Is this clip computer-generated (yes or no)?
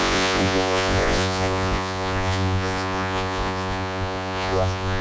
yes